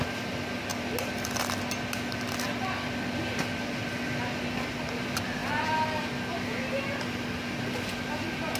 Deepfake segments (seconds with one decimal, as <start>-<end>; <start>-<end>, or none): none